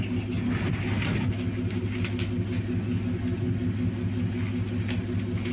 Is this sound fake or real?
real